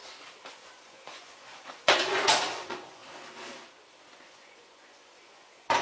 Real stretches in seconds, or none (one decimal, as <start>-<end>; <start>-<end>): 0.0-0.5; 3.0-4.2